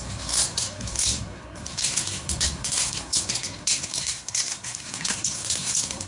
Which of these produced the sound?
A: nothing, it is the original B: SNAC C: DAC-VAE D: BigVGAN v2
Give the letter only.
B